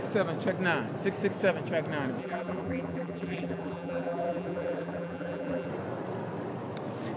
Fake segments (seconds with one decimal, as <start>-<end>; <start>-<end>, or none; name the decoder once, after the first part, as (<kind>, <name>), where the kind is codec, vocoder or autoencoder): 2.2-5.7 (vocoder, BigVGAN v2)